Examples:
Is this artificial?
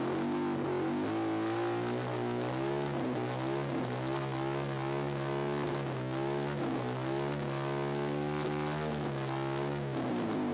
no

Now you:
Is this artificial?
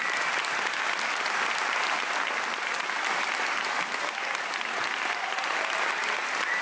no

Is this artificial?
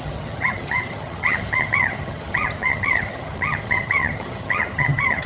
yes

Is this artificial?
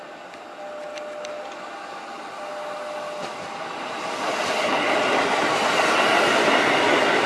no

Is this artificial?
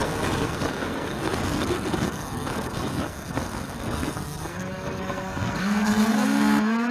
yes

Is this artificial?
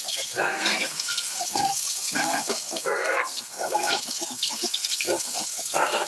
yes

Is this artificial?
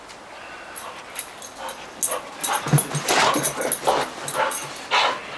no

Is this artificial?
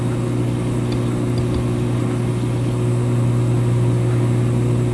no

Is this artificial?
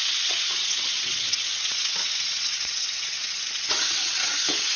yes